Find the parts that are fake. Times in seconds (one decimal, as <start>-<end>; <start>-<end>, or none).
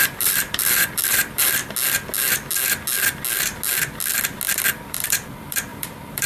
0.0-1.6; 4.5-6.3